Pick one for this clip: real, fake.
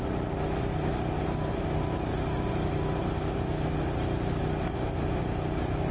real